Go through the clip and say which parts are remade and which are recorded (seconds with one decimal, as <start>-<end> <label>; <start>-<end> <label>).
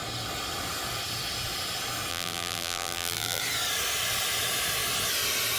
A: 0.0-2.1 recorded; 2.1-3.4 remade; 3.4-5.6 recorded